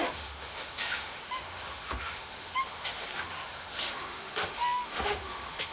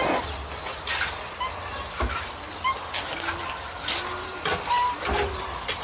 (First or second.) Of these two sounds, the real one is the second